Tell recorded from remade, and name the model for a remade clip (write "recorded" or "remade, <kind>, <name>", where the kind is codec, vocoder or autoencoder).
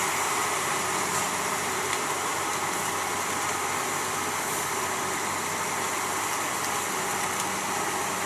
recorded